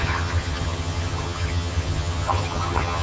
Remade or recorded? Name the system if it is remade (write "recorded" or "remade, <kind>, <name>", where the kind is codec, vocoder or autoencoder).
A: remade, vocoder, HiFi-GAN